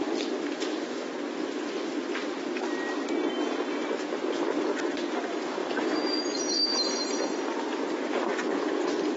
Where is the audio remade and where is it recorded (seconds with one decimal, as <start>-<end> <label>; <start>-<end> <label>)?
0.0-5.6 recorded; 5.6-6.2 remade; 6.2-9.2 recorded

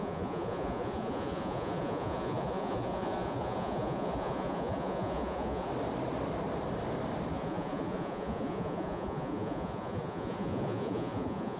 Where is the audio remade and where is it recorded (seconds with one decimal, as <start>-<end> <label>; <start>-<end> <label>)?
0.0-5.7 remade; 5.7-7.3 recorded; 7.3-11.6 remade

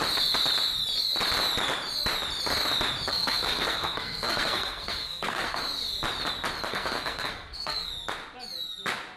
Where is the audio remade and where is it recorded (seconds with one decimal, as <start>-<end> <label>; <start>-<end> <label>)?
0.0-3.1 recorded; 3.1-5.6 remade; 5.6-6.7 recorded; 6.7-7.9 remade; 7.9-9.2 recorded

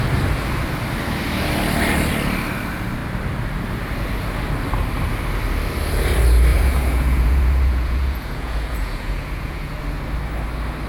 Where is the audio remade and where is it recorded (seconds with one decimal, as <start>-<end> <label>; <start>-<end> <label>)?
0.0-6.5 recorded; 6.5-9.8 remade; 9.8-10.9 recorded

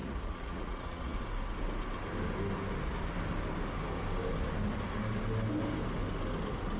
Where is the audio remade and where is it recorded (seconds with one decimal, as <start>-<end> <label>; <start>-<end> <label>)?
0.0-1.2 remade; 1.2-6.8 recorded

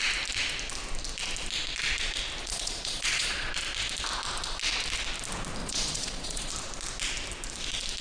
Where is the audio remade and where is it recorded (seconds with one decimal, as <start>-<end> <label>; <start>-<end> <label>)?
0.0-2.4 recorded; 2.4-3.5 remade; 3.5-5.6 recorded; 5.6-6.5 remade; 6.5-8.0 recorded